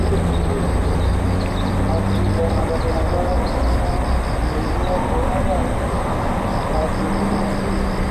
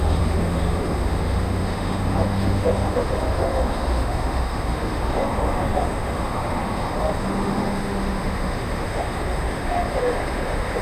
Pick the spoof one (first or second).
second